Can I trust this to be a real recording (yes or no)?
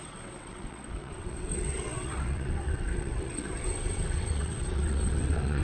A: no